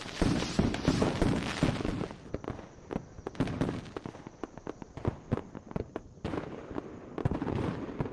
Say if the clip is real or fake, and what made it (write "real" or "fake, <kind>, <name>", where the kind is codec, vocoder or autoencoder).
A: real